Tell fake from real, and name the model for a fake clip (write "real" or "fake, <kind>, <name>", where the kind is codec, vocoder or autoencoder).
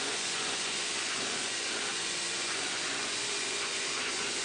fake, vocoder, Vocos